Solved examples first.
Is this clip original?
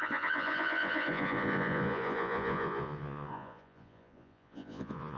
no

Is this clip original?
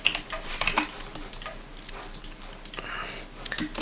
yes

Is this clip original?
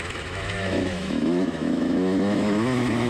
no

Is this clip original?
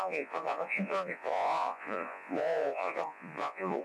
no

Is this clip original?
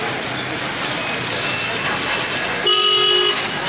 yes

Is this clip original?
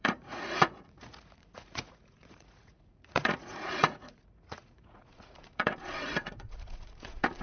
no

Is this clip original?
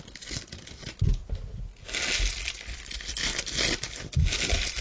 yes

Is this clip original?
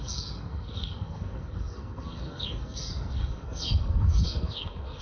no